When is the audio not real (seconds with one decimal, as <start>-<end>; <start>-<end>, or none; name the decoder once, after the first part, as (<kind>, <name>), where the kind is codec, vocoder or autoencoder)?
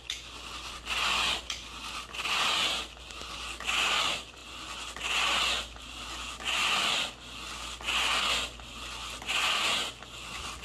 none